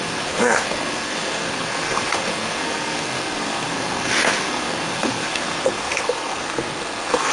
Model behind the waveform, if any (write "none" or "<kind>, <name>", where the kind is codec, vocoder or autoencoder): codec, SNAC